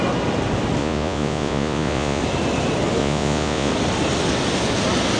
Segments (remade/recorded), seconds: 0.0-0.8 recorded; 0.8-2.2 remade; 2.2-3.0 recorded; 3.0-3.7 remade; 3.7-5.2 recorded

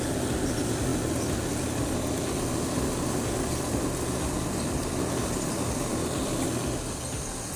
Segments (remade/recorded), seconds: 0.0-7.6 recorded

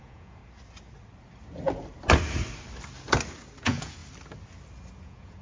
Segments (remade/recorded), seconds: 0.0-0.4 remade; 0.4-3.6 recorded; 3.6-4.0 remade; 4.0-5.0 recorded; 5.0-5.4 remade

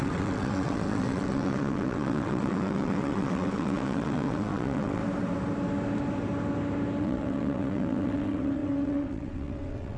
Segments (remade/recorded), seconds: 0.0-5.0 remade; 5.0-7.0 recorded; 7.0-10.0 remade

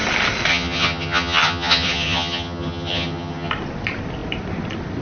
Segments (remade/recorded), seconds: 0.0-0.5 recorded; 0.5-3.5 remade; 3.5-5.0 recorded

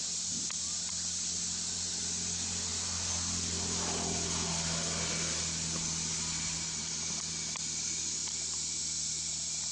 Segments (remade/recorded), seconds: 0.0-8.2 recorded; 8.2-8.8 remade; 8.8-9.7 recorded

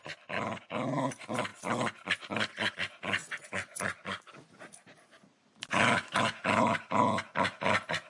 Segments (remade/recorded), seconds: 0.0-3.2 recorded; 3.2-4.2 remade; 4.2-8.1 recorded

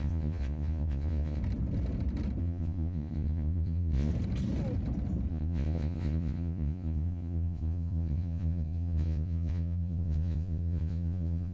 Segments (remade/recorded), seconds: 0.0-1.4 remade; 1.4-2.4 recorded; 2.4-4.1 remade; 4.1-5.3 recorded; 5.3-11.5 remade